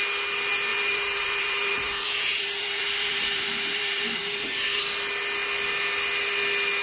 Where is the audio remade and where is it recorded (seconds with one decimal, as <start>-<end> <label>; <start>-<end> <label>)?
0.0-0.7 recorded; 0.7-4.8 remade; 4.8-6.8 recorded

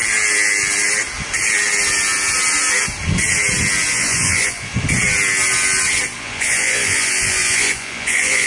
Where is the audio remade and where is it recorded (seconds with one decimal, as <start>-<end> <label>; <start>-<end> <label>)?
0.0-3.9 recorded; 3.9-4.7 remade; 4.7-6.2 recorded; 6.2-8.5 remade